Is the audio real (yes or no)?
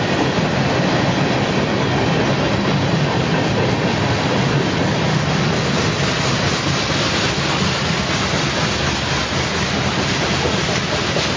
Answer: yes